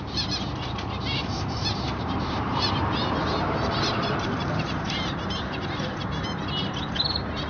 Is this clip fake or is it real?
fake